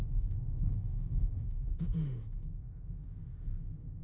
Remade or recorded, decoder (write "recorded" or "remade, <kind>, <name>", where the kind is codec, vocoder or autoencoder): remade, autoencoder, DAC-VAE